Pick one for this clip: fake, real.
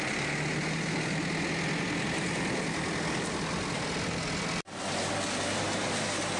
real